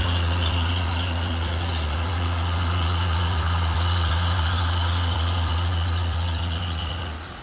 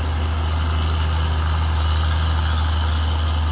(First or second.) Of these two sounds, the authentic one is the second